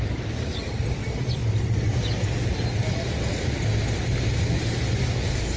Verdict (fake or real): real